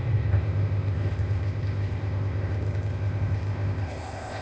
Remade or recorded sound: remade